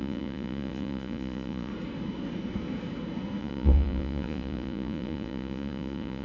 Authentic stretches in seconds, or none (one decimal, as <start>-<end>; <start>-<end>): 1.7-3.4